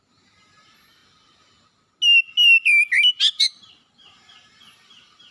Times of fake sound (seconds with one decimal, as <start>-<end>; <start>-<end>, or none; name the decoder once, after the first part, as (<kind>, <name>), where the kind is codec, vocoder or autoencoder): 0.0-1.0 (vocoder, BigVGAN v2); 3.1-5.3